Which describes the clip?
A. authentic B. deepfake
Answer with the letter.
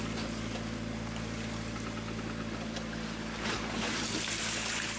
A